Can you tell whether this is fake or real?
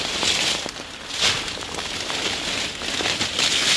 real